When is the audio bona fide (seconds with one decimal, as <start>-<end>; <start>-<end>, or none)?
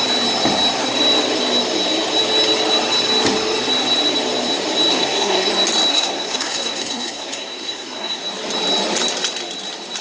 0.0-4.9; 5.5-5.9; 8.2-10.0